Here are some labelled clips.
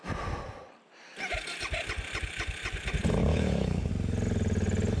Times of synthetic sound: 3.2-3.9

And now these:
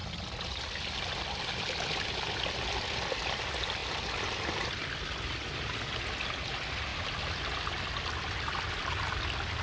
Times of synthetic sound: none